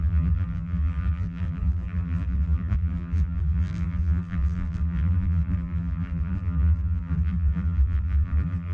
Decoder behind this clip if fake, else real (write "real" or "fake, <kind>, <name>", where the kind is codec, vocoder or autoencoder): fake, vocoder, BigVGAN v2